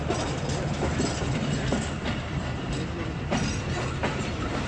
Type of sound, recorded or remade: recorded